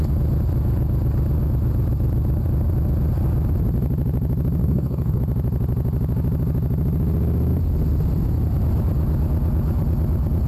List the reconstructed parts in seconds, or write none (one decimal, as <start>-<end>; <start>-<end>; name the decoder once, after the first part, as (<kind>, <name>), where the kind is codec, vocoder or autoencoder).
4.6-5.2 (codec, DAC)